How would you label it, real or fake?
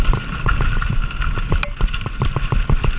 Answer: real